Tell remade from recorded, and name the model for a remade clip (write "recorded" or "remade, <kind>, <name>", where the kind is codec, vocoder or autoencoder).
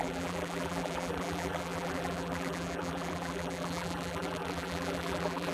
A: remade, vocoder, BigVGAN v2